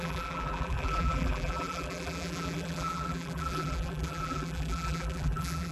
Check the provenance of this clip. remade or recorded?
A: remade